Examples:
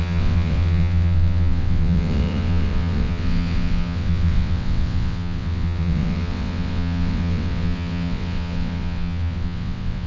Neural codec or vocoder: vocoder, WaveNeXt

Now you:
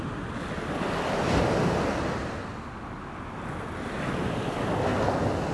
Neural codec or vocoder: none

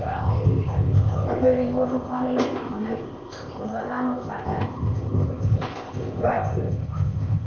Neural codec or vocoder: codec, ZipCodec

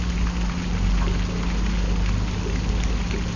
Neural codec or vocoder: none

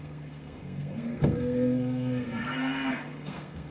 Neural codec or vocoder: codec, SNAC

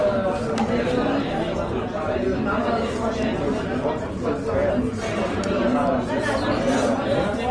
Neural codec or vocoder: none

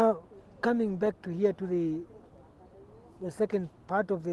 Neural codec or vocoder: none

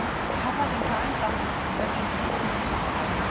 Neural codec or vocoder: none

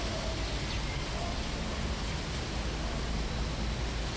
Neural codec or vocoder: none